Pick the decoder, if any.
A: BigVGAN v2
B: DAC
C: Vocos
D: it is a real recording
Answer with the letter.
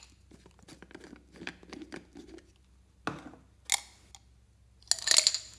D